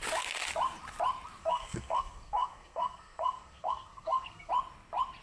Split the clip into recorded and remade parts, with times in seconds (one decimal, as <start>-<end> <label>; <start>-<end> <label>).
0.0-1.4 recorded; 1.4-4.5 remade; 4.5-5.2 recorded